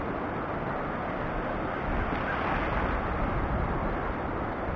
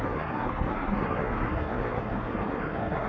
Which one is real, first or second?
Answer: first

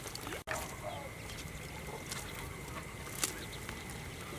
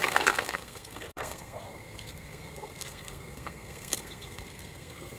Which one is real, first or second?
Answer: first